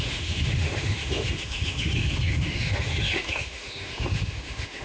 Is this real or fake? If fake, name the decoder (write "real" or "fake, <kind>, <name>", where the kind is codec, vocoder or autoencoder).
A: fake, autoencoder, DAC-VAE